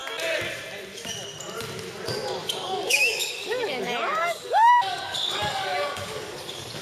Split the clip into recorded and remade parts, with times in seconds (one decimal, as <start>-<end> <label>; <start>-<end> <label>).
0.0-2.4 recorded; 2.4-6.8 remade